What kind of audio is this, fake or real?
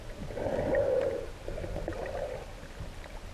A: real